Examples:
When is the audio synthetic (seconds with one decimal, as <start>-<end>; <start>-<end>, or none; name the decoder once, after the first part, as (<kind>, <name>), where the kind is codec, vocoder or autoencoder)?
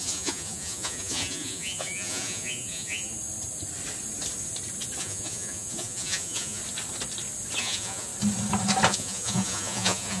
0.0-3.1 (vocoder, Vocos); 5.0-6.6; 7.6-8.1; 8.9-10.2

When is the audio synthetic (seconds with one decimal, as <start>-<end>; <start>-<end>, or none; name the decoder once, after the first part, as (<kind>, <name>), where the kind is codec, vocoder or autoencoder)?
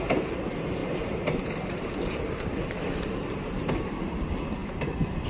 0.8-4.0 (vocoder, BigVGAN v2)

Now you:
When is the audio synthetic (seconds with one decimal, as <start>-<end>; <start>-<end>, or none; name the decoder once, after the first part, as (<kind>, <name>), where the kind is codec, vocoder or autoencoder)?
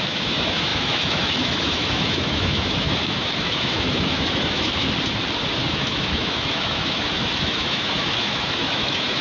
0.0-4.8 (autoencoder, DAC-VAE); 5.7-9.2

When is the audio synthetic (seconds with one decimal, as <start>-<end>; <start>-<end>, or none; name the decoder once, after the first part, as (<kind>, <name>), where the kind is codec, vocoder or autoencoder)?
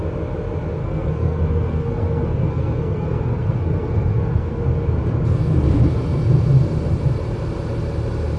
0.8-4.6 (codec, SNAC)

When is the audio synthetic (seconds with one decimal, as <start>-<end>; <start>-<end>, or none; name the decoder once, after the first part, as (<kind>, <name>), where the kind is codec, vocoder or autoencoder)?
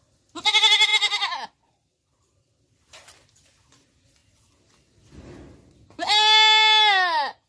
none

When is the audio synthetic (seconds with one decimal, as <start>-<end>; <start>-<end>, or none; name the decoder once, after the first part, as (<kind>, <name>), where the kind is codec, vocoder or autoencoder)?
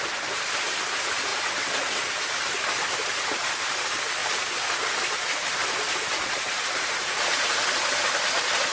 none